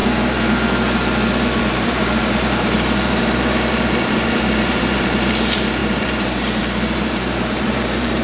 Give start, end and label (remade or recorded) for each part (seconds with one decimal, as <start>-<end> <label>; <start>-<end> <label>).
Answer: 0.0-1.6 recorded; 1.6-8.2 remade